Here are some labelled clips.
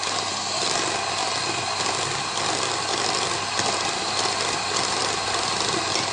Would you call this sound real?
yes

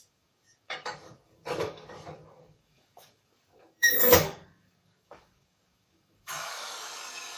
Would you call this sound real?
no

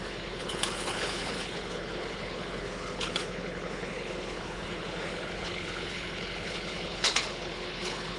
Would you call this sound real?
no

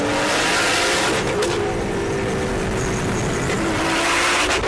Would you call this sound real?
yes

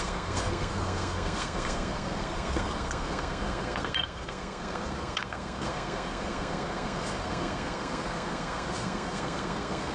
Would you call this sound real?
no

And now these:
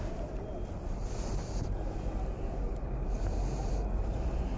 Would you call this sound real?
yes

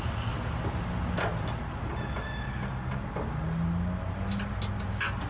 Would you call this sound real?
yes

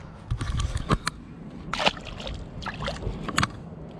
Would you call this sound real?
yes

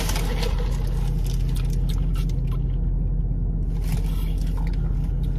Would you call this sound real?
yes